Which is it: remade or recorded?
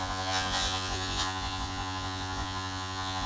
remade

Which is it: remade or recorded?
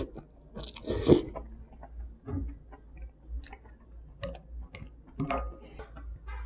recorded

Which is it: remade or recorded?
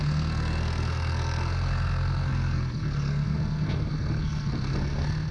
remade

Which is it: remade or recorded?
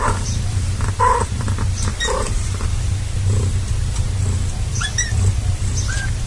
remade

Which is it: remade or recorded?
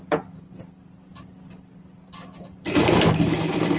recorded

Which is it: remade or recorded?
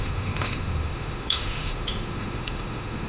remade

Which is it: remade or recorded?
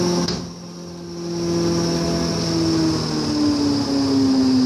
recorded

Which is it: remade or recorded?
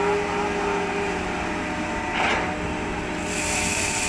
recorded